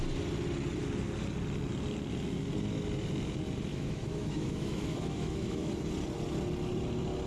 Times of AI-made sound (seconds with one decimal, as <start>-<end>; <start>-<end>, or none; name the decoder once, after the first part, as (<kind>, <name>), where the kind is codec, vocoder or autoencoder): 3.7-5.7 (autoencoder, DAC-VAE)